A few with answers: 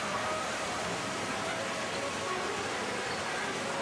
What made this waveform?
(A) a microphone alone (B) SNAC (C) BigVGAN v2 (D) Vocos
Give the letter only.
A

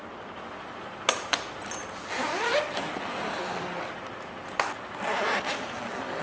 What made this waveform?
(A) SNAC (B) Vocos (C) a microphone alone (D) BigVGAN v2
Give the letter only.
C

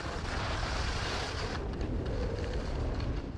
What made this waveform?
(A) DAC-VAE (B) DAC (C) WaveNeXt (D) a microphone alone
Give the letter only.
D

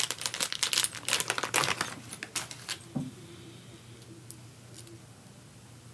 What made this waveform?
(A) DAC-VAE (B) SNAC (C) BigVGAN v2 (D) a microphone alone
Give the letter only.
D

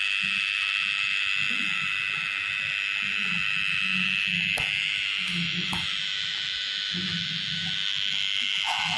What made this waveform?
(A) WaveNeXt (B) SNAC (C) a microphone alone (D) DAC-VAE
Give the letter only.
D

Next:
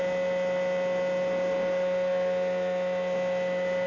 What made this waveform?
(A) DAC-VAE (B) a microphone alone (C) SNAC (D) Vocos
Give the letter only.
B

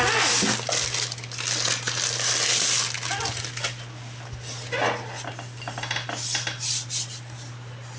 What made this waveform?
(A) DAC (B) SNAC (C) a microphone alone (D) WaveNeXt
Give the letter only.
C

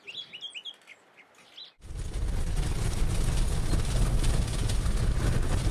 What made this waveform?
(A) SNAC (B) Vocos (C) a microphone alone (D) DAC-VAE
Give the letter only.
C